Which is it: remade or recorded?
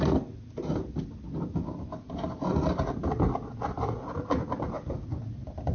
recorded